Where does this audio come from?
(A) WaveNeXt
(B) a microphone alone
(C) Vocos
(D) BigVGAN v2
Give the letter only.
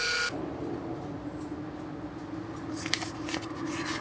B